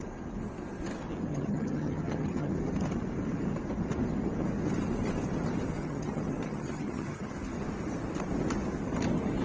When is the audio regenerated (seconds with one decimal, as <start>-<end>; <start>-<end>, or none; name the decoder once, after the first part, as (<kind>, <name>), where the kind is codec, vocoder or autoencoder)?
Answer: 1.3-2.5 (vocoder, HiFi-GAN); 5.8-7.3